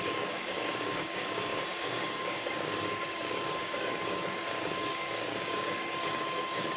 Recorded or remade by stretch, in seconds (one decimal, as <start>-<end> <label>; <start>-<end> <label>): 0.0-6.8 remade